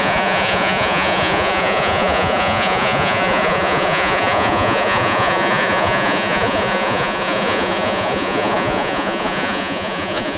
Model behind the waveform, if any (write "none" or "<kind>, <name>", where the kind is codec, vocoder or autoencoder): vocoder, Vocos